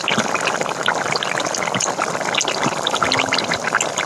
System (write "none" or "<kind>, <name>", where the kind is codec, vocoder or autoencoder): none